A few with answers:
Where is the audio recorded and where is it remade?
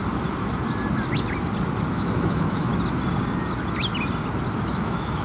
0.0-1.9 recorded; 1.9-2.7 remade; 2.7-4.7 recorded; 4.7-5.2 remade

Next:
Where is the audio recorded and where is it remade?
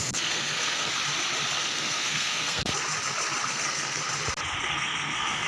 0.0-0.9 remade; 0.9-1.6 recorded; 1.6-2.7 remade; 2.7-3.5 recorded; 3.5-4.0 remade; 4.0-4.6 recorded; 4.6-5.5 remade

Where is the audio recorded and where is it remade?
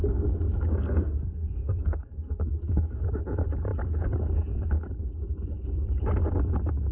0.0-0.7 recorded; 0.7-3.0 remade; 3.0-6.9 recorded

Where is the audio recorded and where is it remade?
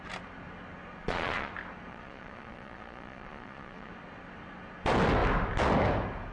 0.0-1.0 recorded; 1.0-1.5 remade; 1.5-1.9 recorded; 1.9-3.9 remade; 3.9-6.3 recorded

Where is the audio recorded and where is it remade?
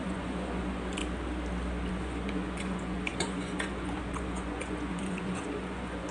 0.0-1.0 remade; 1.0-1.9 recorded; 1.9-6.1 remade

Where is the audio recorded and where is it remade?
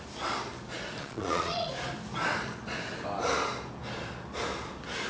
0.0-1.0 recorded; 1.0-1.7 remade; 1.7-5.1 recorded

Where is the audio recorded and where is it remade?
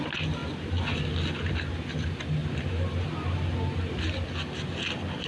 0.0-5.3 recorded